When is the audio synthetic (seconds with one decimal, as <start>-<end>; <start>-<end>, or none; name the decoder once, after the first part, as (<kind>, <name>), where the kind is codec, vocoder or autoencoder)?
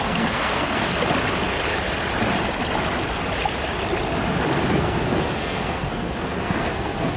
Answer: 0.0-0.9 (codec, SNAC); 4.7-7.2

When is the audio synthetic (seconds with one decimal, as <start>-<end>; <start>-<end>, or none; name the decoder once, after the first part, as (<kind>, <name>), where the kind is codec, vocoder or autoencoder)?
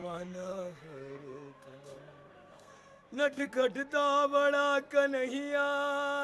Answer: 0.0-3.5 (codec, SNAC)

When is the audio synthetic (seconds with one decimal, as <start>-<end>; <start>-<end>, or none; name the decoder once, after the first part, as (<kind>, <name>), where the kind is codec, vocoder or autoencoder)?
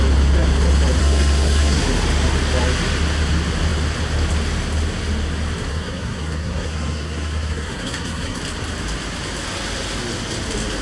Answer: 1.0-1.8 (codec, SNAC); 5.7-8.4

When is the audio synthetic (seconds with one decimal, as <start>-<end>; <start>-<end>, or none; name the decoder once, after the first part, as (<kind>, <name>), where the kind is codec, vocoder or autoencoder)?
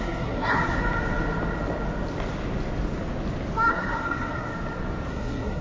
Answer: 0.0-0.8 (codec, SNAC); 3.7-4.5; 5.1-5.6